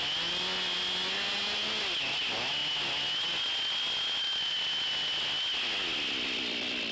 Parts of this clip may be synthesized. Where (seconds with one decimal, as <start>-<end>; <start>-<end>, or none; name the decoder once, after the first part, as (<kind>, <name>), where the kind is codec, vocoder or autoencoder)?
none

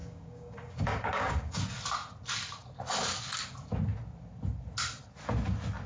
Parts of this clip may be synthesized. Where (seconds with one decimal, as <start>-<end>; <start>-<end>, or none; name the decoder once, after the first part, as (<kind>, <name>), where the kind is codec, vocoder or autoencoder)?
0.0-1.6 (codec, DAC)

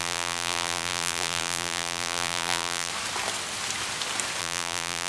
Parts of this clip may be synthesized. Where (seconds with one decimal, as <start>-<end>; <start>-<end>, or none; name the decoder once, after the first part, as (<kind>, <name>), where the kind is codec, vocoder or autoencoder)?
0.0-2.9 (vocoder, BigVGAN v2); 4.4-5.1

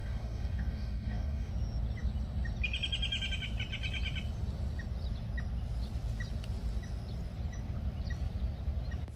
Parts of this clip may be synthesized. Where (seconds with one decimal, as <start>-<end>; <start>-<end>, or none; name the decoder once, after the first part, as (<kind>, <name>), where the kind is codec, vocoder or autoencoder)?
0.0-1.5 (codec, DAC)

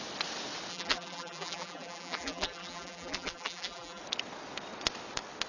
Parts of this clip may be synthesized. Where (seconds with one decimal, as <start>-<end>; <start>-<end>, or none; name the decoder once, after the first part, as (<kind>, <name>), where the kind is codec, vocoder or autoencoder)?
0.7-4.0 (vocoder, BigVGAN v2)

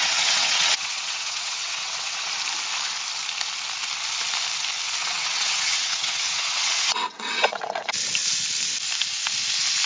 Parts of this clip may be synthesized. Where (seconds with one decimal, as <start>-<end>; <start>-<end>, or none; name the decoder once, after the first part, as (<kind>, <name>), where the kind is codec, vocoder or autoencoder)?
0.0-2.3 (vocoder, WaveNeXt); 5.0-7.9

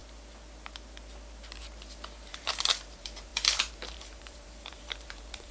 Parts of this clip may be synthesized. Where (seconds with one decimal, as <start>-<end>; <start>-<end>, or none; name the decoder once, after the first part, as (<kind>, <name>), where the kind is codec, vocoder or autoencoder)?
2.3-5.5 (vocoder, BigVGAN v2)